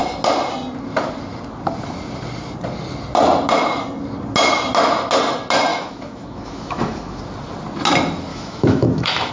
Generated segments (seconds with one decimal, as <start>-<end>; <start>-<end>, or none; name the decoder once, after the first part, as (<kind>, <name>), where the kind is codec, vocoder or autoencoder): 5.7-7.2 (autoencoder, DAC-VAE); 8.3-9.3